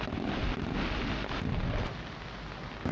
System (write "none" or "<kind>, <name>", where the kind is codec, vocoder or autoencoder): none